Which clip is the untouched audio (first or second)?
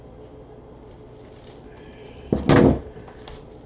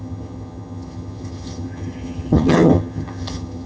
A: first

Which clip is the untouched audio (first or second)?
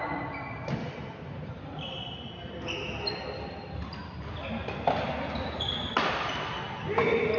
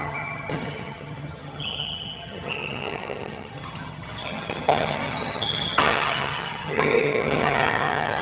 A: first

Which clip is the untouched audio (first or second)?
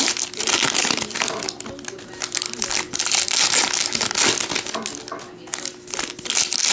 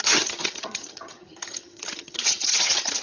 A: first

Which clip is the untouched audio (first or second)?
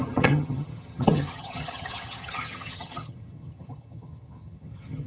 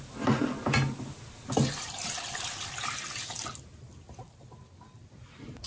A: second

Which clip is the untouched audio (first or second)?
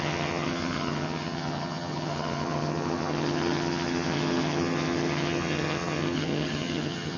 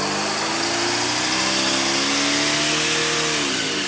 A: second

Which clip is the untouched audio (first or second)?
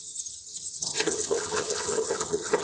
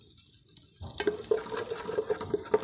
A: second